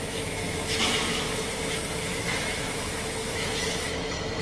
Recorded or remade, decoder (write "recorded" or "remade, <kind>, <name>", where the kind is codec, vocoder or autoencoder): remade, autoencoder, DAC-VAE